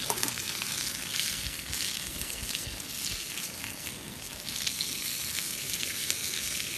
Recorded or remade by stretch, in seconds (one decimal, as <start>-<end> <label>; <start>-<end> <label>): 0.0-6.8 remade